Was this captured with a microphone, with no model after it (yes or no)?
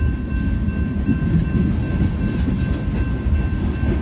yes